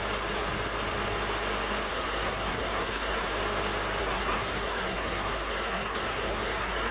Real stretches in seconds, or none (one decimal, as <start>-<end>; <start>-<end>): 0.0-1.9; 3.3-4.0